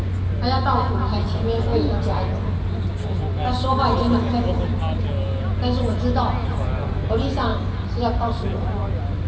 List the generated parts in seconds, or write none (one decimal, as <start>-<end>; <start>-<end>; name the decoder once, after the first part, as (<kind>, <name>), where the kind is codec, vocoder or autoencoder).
none